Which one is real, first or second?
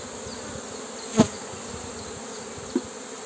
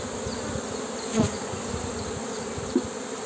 first